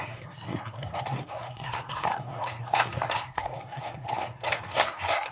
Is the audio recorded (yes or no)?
no